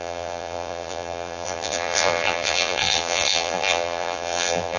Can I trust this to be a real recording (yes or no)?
no